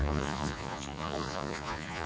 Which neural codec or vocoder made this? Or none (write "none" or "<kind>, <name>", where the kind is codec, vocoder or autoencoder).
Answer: vocoder, Vocos